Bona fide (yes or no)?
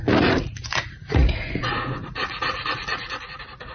no